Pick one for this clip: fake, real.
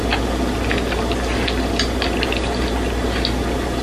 real